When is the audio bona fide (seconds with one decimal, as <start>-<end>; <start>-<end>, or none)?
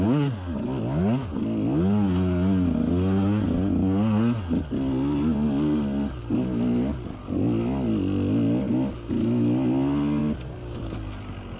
0.0-11.6